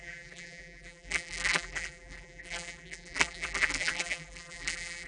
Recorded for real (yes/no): no